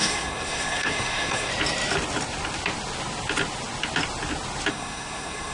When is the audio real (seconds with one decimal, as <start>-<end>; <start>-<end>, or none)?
1.5-4.7